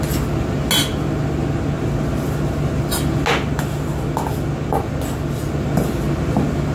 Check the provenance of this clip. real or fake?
real